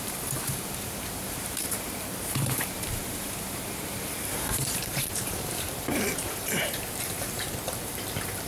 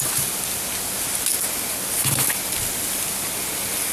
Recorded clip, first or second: second